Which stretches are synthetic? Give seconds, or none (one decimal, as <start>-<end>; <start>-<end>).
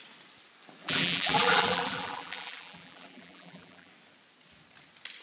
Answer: 0.8-3.9